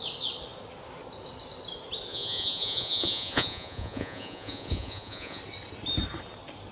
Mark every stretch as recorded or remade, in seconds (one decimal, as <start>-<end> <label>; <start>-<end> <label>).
0.0-2.1 recorded; 2.1-5.4 remade; 5.4-6.7 recorded